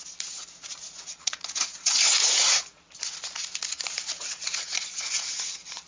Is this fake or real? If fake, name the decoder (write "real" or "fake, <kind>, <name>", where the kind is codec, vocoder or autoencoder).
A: fake, vocoder, Vocos